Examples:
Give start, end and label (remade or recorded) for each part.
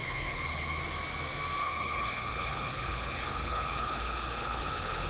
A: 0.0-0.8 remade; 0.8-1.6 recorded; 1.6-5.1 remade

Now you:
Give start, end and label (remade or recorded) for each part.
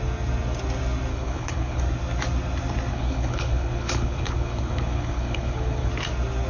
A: 0.0-1.1 recorded; 1.1-1.8 remade; 1.8-2.9 recorded; 2.9-5.9 remade; 5.9-6.5 recorded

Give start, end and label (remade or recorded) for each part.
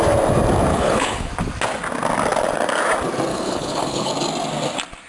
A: 0.0-0.7 recorded; 0.7-1.3 remade; 1.3-3.3 recorded; 3.3-4.1 remade; 4.1-5.1 recorded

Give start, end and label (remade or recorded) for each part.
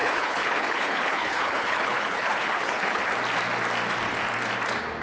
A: 0.0-3.0 remade; 3.0-5.0 recorded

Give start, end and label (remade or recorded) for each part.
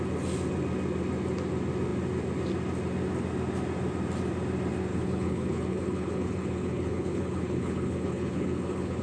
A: 0.0-4.9 recorded; 4.9-9.0 remade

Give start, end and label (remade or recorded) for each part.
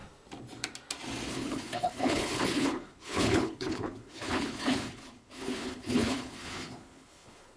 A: 0.0-1.3 recorded; 1.3-7.6 remade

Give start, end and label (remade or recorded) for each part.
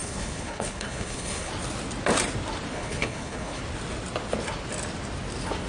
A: 0.0-1.5 remade; 1.5-2.7 recorded; 2.7-3.6 remade; 3.6-5.7 recorded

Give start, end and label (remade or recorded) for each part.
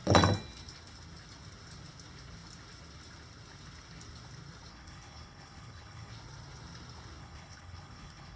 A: 0.0-4.7 recorded; 4.7-6.1 remade; 6.1-7.2 recorded; 7.2-8.4 remade